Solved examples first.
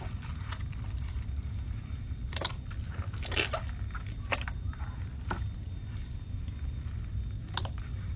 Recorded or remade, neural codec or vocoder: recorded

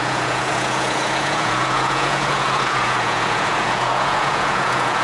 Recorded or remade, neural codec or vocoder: remade, vocoder, Vocos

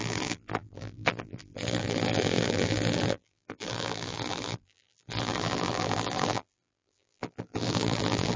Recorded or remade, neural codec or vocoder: remade, vocoder, BigVGAN v2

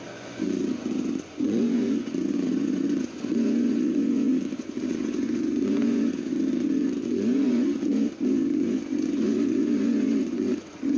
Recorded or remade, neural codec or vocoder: remade, vocoder, Vocos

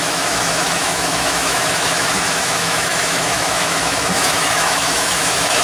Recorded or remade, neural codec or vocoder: remade, autoencoder, DAC-VAE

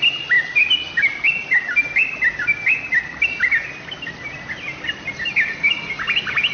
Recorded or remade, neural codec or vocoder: recorded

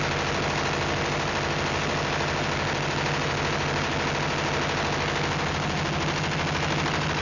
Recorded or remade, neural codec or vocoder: recorded